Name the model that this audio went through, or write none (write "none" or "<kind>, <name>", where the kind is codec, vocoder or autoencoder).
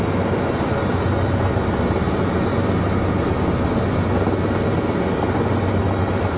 none